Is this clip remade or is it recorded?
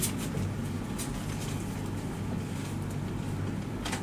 recorded